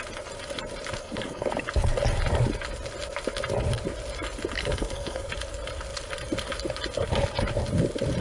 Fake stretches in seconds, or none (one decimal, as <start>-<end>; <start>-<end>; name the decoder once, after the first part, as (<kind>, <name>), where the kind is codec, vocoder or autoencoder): 1.0-1.5 (codec, SNAC); 4.6-5.3